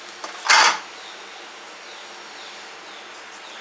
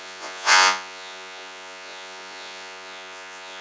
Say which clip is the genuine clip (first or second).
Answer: first